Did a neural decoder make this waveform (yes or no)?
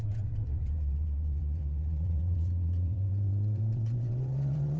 yes